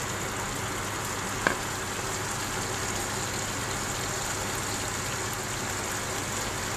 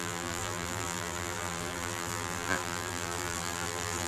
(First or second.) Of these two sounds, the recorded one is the first